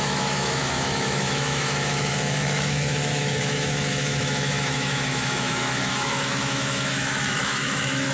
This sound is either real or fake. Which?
fake